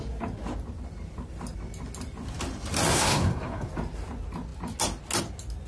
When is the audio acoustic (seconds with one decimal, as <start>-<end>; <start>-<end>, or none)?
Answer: 0.0-2.9; 3.7-5.7